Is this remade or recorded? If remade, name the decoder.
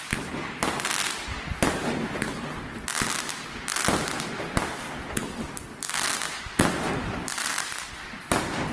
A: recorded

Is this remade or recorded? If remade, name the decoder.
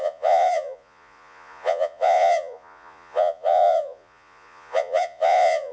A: remade, vocoder, Vocos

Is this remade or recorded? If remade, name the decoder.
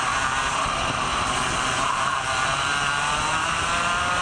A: recorded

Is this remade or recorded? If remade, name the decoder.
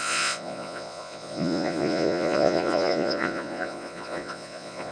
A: remade, vocoder, Vocos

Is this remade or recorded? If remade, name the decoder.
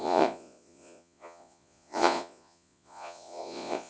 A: remade, vocoder, Vocos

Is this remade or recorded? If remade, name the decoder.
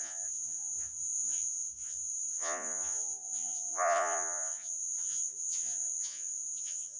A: remade, vocoder, Vocos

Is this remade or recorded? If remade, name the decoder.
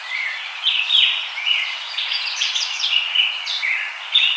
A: remade, vocoder, Vocos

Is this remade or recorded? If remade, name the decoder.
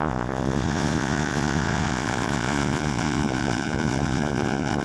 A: remade, vocoder, Vocos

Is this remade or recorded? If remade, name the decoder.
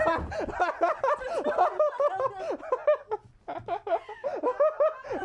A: recorded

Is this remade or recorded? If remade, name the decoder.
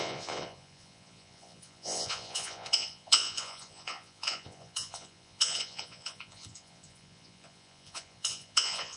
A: remade, vocoder, Vocos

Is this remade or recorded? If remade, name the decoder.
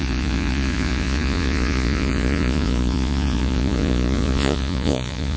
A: remade, vocoder, Vocos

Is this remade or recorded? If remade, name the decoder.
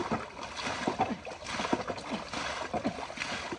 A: recorded